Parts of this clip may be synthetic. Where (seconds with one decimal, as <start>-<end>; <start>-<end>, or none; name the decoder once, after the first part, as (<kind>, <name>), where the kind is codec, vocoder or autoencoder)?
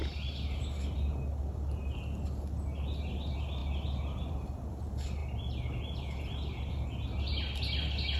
none